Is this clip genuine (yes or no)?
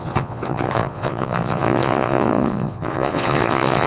no